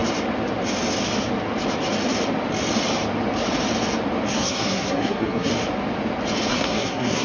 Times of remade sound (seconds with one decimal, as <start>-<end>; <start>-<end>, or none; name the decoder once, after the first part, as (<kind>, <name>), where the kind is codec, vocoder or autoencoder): 4.3-5.5 (codec, SNAC); 6.5-7.2